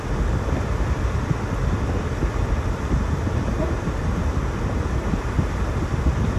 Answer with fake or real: fake